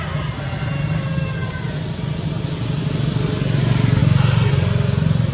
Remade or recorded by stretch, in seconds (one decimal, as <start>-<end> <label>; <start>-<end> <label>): 0.0-5.3 recorded